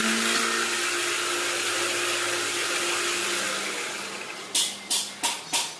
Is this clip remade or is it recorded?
recorded